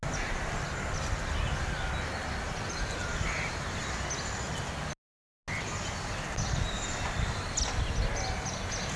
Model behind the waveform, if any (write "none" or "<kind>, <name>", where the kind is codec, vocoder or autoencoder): none